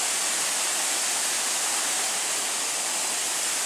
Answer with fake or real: real